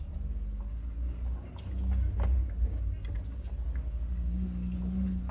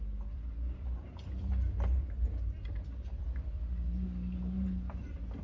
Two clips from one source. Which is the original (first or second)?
first